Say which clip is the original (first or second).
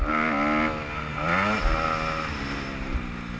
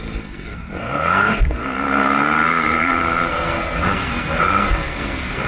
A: first